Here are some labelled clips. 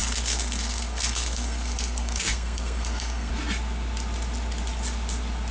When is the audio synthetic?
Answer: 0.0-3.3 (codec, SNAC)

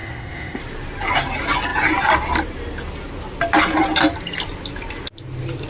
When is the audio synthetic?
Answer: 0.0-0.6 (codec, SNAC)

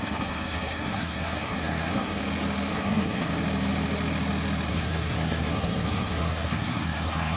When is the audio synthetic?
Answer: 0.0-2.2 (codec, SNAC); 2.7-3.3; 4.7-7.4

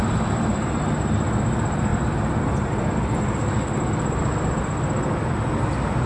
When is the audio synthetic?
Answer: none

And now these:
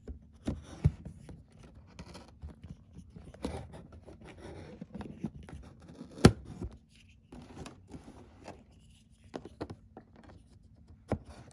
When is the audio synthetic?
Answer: none